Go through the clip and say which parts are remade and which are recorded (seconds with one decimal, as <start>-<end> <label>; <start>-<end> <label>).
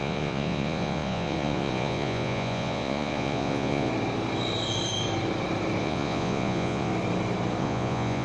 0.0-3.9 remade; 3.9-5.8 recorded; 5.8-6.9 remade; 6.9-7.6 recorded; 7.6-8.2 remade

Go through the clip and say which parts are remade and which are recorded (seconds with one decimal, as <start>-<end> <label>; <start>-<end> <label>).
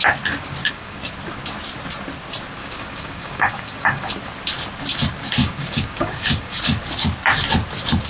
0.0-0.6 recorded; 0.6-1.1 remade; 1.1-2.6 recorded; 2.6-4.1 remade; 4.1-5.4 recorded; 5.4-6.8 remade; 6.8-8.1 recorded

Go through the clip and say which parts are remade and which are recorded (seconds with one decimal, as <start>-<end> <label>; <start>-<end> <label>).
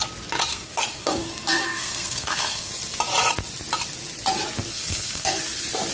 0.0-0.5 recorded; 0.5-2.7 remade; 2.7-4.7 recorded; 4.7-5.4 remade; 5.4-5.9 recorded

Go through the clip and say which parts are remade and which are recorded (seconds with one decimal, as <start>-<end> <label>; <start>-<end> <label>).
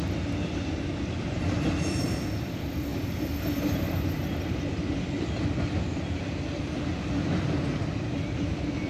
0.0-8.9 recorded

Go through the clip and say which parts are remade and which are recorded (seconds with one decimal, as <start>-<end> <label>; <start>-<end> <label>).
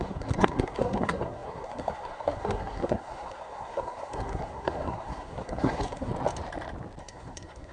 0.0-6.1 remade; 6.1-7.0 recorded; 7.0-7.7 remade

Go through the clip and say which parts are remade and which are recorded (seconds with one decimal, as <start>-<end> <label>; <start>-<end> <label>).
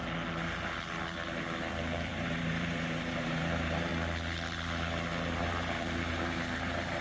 0.0-1.7 recorded; 1.7-3.9 remade; 3.9-5.4 recorded; 5.4-7.0 remade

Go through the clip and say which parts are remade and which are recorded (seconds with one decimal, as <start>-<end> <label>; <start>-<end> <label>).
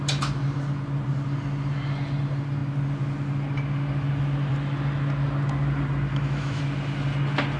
0.0-6.1 recorded; 6.1-6.6 remade; 6.6-7.6 recorded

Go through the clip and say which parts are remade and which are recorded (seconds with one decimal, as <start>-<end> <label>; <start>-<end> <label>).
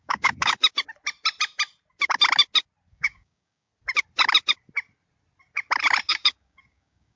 0.0-0.6 remade; 0.6-2.9 recorded; 2.9-3.7 remade; 3.7-6.1 recorded; 6.1-7.2 remade